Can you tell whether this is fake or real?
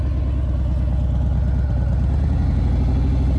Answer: real